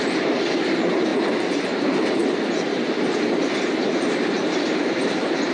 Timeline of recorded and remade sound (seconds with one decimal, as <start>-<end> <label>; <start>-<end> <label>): 0.0-2.2 remade; 2.2-3.8 recorded; 3.8-5.5 remade